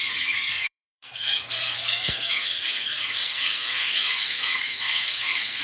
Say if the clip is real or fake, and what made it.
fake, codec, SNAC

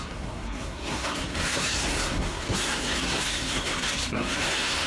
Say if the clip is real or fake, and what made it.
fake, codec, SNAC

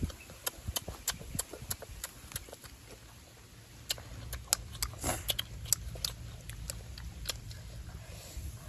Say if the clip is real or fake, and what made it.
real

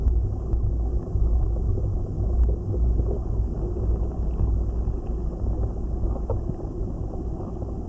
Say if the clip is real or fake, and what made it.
real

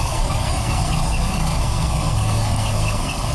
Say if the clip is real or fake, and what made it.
fake, codec, SNAC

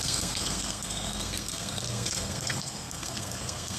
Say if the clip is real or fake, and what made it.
fake, codec, SNAC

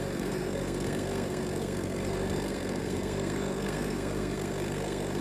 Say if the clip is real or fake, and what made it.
fake, codec, SNAC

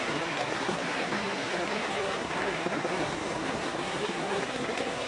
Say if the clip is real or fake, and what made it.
fake, codec, SNAC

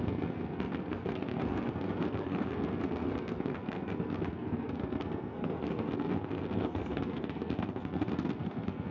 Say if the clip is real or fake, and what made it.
fake, codec, SNAC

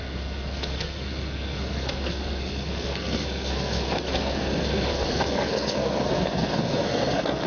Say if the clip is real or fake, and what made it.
fake, codec, SNAC